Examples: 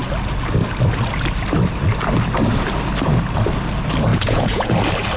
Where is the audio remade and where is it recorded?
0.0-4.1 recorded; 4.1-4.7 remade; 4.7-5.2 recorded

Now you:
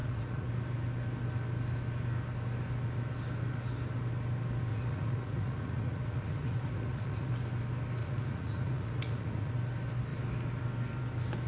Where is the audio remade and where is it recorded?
0.0-0.5 remade; 0.5-4.7 recorded; 4.7-7.3 remade; 7.3-8.0 recorded; 8.0-9.5 remade; 9.5-11.5 recorded

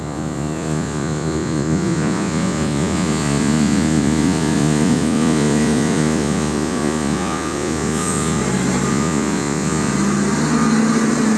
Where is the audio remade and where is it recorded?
0.0-8.4 remade; 8.4-8.9 recorded; 8.9-9.9 remade; 9.9-11.4 recorded